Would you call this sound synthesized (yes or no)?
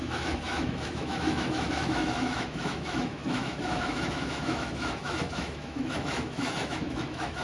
yes